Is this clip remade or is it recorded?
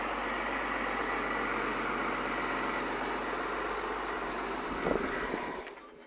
recorded